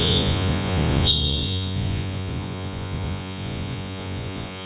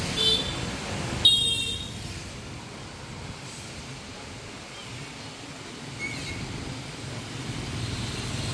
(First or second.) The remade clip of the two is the first